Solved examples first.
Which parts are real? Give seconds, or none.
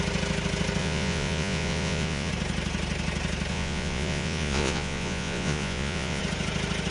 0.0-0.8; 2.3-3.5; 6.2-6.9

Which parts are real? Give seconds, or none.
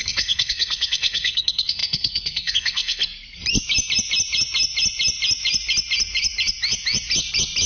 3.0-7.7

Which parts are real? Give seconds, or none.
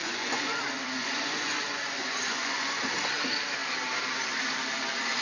0.6-1.0; 2.8-5.2